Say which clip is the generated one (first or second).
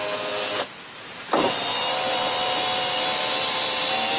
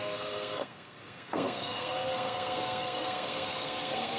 second